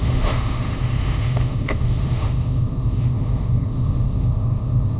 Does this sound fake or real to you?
fake